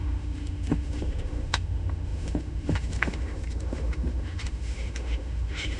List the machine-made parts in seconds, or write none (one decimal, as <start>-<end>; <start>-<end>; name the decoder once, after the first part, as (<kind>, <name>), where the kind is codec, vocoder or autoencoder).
0.0-5.8 (autoencoder, DAC-VAE)